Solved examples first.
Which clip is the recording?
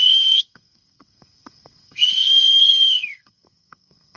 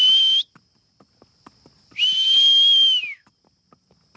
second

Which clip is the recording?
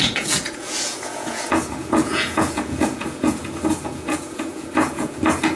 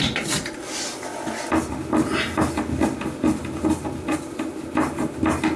second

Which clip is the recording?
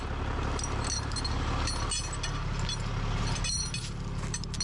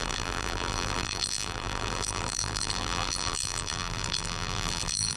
first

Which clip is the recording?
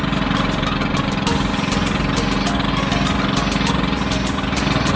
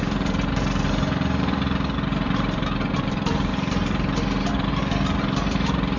first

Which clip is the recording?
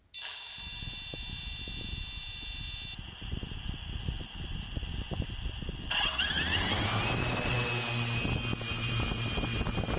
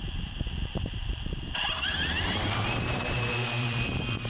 first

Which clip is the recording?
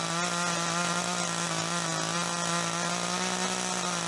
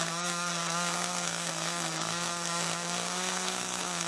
first